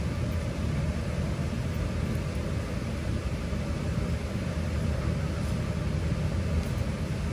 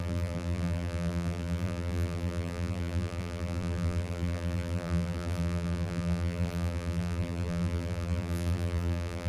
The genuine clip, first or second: first